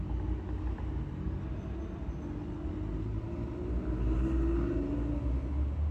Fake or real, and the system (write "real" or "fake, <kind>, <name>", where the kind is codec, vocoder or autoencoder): real